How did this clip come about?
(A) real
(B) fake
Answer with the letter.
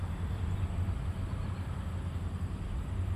A